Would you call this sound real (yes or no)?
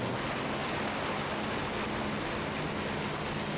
yes